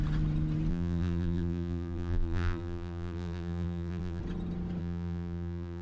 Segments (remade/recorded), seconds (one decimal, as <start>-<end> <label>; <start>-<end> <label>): 0.0-0.7 recorded; 0.7-4.2 remade; 4.2-4.8 recorded; 4.8-5.8 remade